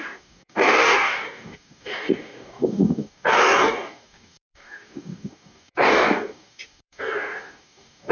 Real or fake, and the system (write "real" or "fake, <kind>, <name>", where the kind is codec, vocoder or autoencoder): fake, codec, DAC